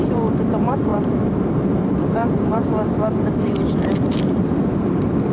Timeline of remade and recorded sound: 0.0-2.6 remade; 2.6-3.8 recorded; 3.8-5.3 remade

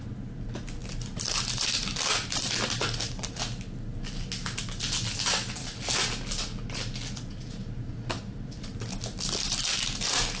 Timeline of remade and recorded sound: 0.0-10.4 recorded

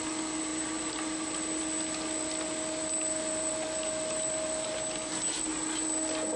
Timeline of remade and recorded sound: 0.0-0.5 recorded; 0.5-1.6 remade; 1.6-2.8 recorded; 2.8-4.7 remade; 4.7-5.5 recorded; 5.5-6.4 remade

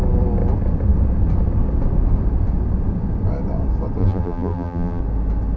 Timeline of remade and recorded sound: 0.0-4.0 recorded; 4.0-5.0 remade; 5.0-5.6 recorded

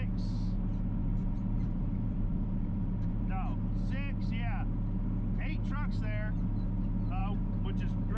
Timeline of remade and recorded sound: 0.0-1.0 recorded; 1.0-3.2 remade; 3.2-8.2 recorded

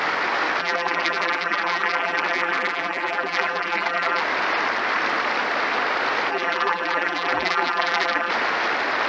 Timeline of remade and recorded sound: 0.0-0.6 recorded; 0.6-4.2 remade; 4.2-6.3 recorded; 6.3-8.3 remade; 8.3-9.1 recorded

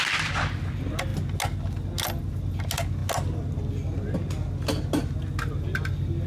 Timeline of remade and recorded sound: 0.0-6.3 recorded